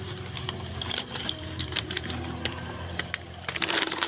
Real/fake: fake